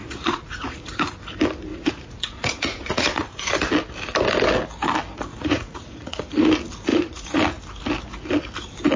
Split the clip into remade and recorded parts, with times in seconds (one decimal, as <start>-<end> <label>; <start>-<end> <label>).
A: 0.0-0.8 remade; 0.8-1.7 recorded; 1.7-3.5 remade; 3.5-5.3 recorded; 5.3-6.2 remade; 6.2-6.9 recorded; 6.9-7.4 remade; 7.4-9.0 recorded